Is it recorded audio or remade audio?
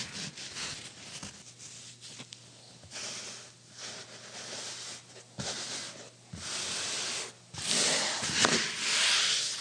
recorded